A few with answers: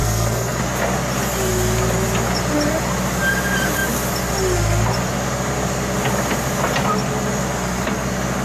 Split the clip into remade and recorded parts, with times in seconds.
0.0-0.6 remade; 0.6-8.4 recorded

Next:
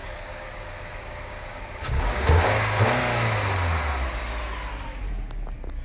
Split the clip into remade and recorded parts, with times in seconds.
0.0-2.8 remade; 2.8-5.8 recorded